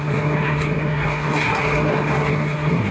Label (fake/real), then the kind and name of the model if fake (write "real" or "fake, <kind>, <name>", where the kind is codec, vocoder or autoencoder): fake, codec, SNAC